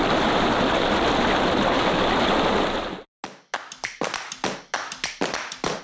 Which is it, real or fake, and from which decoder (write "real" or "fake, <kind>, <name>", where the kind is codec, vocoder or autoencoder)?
real